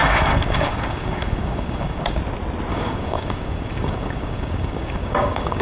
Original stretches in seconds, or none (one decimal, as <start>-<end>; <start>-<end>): 2.2-2.7